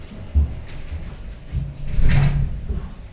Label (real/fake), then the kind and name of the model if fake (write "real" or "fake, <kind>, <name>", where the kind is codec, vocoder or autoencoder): real